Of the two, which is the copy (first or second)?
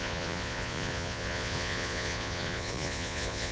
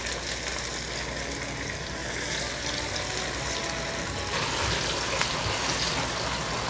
first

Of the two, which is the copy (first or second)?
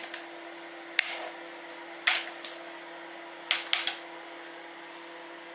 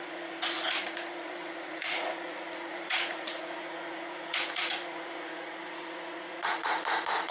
second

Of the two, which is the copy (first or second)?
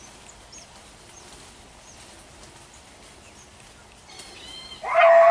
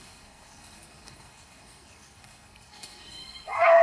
second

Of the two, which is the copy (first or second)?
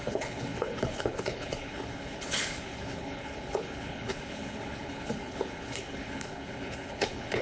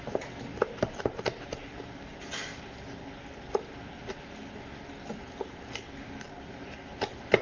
first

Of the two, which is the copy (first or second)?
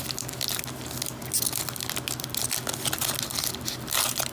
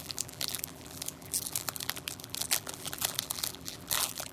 second